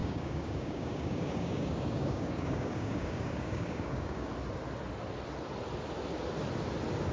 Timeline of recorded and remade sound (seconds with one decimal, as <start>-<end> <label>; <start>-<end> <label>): 0.0-4.3 remade; 4.3-7.1 recorded

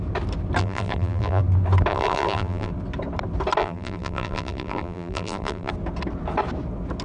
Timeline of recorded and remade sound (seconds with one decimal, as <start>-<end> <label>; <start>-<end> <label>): 0.0-0.6 recorded; 0.6-1.4 remade; 1.4-1.9 recorded; 1.9-2.7 remade; 2.7-3.6 recorded; 3.6-5.7 remade; 5.7-7.0 recorded

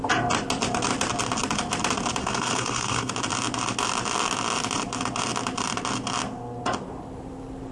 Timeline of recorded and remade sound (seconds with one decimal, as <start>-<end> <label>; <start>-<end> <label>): 0.0-2.2 recorded; 2.2-3.1 remade; 3.1-7.7 recorded

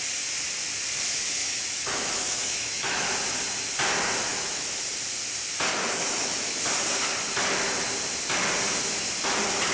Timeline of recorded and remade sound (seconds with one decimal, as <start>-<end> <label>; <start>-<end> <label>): 0.0-1.4 recorded; 1.4-3.1 remade; 3.1-4.3 recorded; 4.3-4.9 remade; 4.9-5.7 recorded; 5.7-6.6 remade; 6.6-9.7 recorded

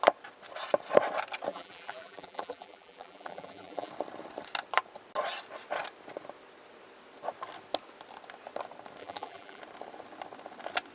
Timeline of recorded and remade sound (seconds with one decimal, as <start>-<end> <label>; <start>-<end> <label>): 0.0-1.5 recorded; 1.5-3.9 remade; 3.9-9.0 recorded; 9.0-9.6 remade; 9.6-10.9 recorded

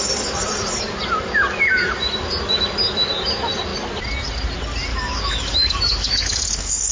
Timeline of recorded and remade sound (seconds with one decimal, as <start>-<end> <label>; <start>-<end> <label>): 0.0-4.9 recorded; 4.9-6.9 remade